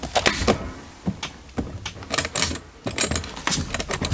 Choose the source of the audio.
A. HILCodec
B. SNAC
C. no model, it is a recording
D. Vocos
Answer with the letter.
C